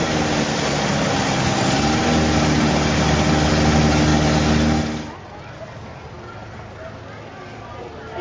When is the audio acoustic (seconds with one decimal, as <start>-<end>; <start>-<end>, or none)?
0.0-8.2